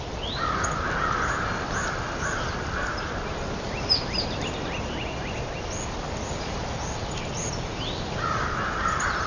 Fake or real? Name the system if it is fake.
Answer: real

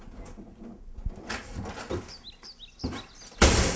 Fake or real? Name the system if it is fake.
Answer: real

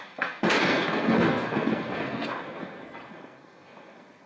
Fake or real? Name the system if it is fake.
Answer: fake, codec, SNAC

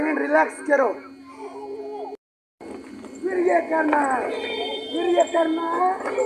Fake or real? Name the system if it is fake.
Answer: real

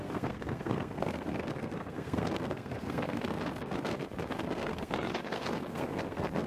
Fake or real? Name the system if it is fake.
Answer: fake, codec, SNAC